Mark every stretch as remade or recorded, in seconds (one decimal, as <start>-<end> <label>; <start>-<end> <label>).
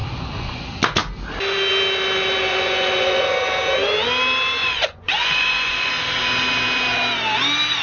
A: 0.0-0.6 remade; 0.6-2.5 recorded; 2.5-3.2 remade; 3.2-4.6 recorded; 4.6-5.9 remade; 5.9-7.8 recorded